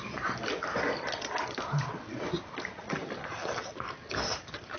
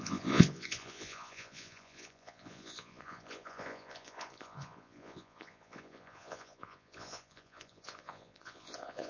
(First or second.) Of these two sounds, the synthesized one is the second